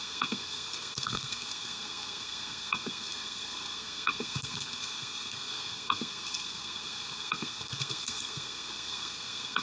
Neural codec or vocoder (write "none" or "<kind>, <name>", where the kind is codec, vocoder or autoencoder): codec, SNAC